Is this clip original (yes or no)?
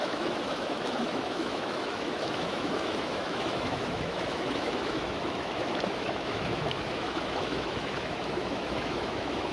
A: no